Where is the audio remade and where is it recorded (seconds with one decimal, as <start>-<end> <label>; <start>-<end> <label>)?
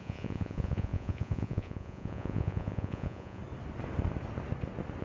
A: 0.0-3.4 remade; 3.4-5.0 recorded